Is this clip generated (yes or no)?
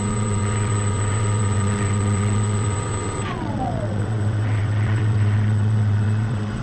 yes